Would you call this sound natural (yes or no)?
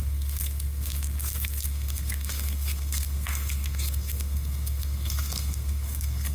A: no